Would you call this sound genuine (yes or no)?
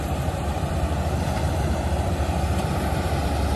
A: no